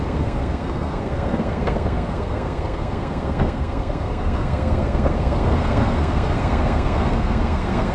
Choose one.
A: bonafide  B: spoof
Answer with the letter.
B